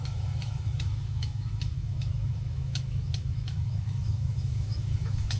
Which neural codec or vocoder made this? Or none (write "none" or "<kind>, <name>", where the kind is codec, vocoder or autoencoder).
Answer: autoencoder, DAC-VAE